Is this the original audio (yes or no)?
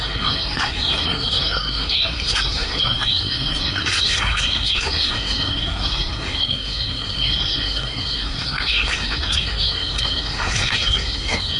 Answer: no